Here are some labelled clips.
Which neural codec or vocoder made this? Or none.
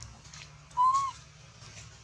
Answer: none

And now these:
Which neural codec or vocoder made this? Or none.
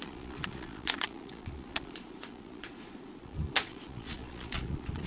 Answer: vocoder, Vocos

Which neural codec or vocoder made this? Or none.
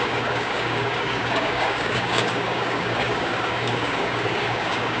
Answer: codec, DAC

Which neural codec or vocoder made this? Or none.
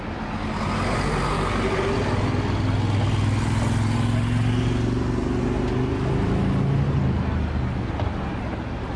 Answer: none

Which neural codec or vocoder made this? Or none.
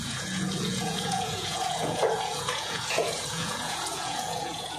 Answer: vocoder, Vocos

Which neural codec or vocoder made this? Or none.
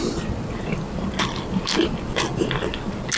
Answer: none